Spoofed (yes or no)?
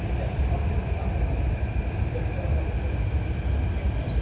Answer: no